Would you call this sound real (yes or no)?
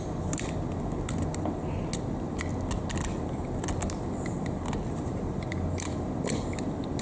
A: yes